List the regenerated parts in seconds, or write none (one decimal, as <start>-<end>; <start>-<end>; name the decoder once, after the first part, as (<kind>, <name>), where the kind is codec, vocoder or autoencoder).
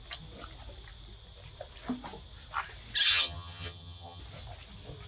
3.1-4.2 (vocoder, HiFi-GAN)